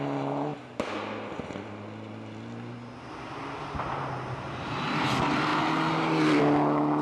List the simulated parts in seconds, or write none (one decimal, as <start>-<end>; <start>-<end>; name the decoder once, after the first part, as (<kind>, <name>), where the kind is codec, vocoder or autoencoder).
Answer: none